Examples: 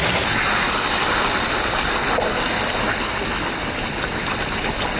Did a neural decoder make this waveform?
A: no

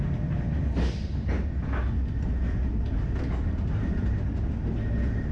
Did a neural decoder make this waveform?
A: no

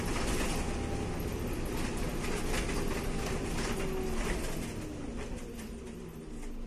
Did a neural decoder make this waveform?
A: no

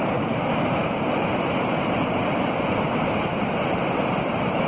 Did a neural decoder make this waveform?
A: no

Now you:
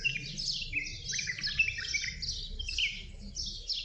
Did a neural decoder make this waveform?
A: no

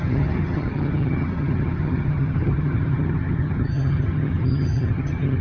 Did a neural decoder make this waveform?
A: yes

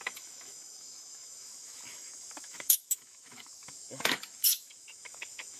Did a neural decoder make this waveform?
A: yes